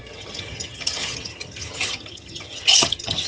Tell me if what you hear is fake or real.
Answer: fake